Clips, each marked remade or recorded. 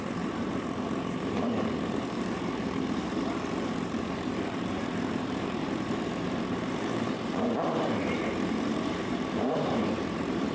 remade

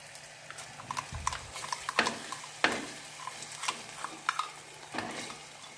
recorded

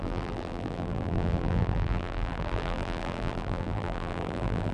remade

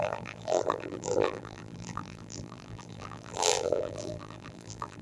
remade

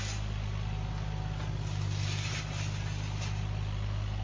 recorded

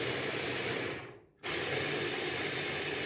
remade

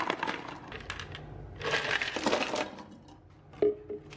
recorded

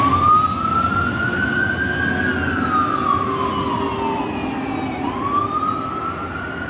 recorded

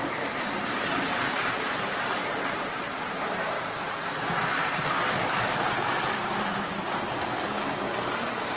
remade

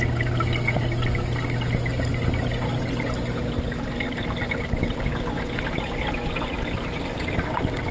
recorded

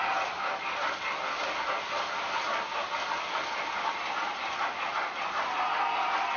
recorded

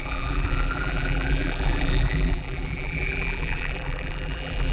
remade